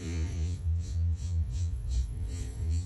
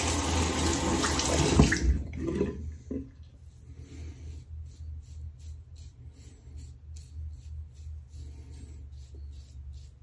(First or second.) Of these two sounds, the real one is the second